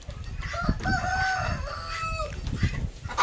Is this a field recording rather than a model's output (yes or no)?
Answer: yes